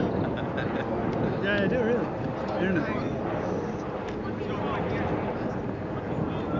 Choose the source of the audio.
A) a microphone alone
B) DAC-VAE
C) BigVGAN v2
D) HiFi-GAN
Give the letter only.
A